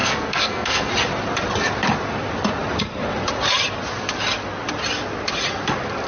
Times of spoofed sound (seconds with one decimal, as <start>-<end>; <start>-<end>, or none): 0.0-0.9